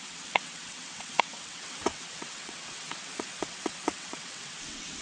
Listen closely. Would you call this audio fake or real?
fake